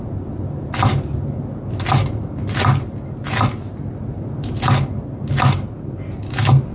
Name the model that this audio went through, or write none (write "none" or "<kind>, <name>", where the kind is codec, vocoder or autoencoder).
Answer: none